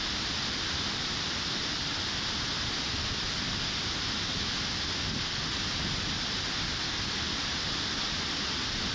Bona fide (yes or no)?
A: yes